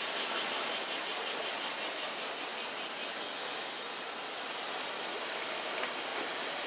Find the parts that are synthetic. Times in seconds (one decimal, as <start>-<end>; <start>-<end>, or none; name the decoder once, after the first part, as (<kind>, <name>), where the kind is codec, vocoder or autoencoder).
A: none